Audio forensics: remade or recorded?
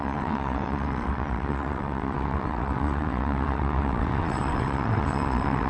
remade